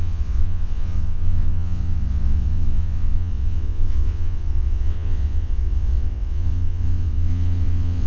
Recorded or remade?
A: remade